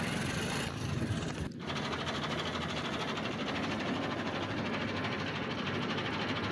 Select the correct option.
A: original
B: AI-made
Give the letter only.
A